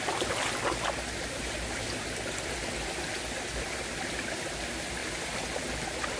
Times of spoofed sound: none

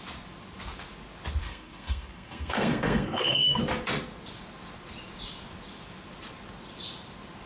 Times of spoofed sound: 1.4-3.6 (codec, SNAC)

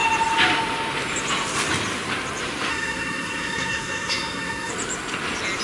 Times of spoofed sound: 2.7-4.7 (codec, SNAC)

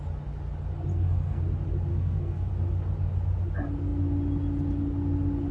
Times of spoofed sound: 0.9-1.4 (codec, SNAC); 1.9-2.5

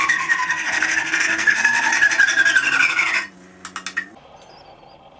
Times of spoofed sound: 0.0-1.9 (codec, SNAC)

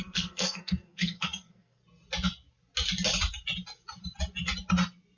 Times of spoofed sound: 0.0-1.8 (codec, SNAC)